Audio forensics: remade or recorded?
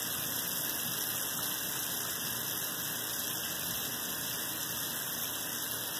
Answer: recorded